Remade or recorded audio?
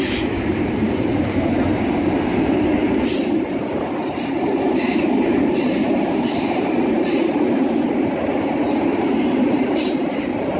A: remade